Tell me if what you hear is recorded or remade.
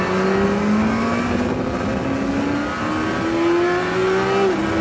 recorded